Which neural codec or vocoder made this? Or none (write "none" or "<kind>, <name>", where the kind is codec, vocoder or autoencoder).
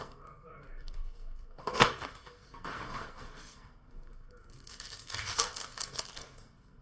codec, SNAC